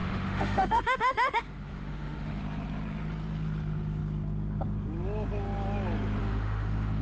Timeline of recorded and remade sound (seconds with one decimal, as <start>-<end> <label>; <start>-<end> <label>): 0.0-2.4 remade; 2.4-6.2 recorded; 6.2-7.0 remade